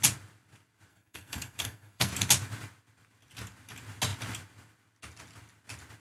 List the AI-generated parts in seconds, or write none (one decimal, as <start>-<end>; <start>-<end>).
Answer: 0.9-2.1